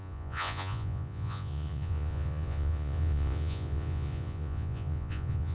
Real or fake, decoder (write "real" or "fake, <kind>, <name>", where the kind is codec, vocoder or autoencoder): fake, vocoder, Vocos